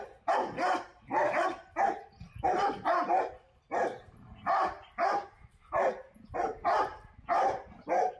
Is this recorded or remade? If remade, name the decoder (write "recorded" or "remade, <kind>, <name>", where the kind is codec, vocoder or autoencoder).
remade, vocoder, BigVGAN v2